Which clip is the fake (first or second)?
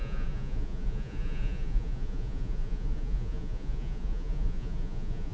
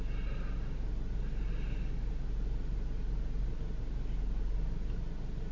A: first